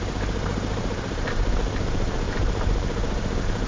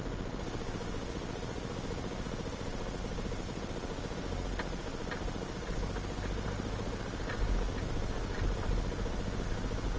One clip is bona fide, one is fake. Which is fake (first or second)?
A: first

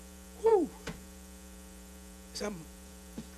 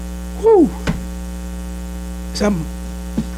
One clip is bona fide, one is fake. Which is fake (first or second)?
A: first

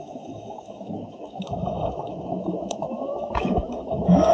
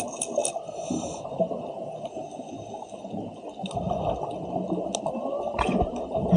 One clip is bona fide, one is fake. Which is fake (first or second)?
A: first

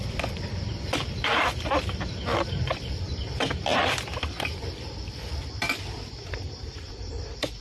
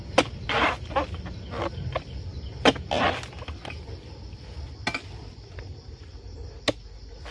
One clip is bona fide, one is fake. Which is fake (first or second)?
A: first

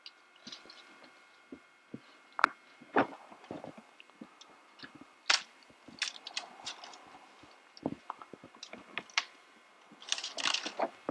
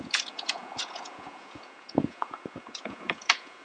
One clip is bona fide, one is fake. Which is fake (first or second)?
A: second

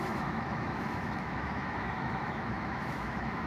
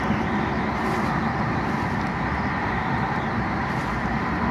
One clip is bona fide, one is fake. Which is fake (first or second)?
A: first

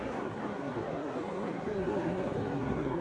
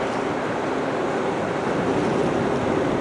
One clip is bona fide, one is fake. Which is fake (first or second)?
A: first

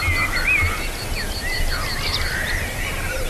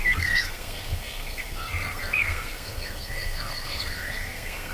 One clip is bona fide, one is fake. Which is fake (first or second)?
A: second